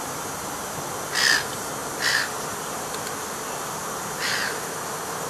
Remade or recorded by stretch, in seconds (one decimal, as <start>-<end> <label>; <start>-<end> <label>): 0.0-5.3 recorded